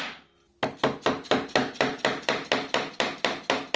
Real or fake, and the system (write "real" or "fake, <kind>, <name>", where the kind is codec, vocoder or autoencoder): real